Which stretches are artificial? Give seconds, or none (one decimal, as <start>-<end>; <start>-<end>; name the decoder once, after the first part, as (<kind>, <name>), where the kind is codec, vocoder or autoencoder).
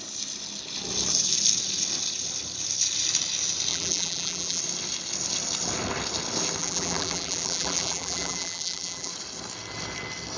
3.7-4.6 (vocoder, BigVGAN v2); 6.6-9.1